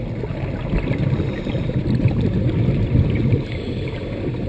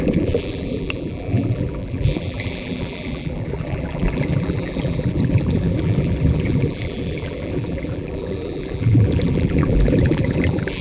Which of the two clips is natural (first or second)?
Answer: first